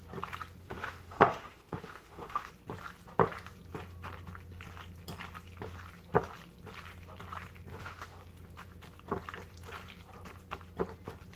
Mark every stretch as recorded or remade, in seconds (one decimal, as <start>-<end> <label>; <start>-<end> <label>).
0.0-0.6 recorded; 0.6-2.5 remade; 2.5-7.7 recorded; 7.7-8.2 remade; 8.2-11.4 recorded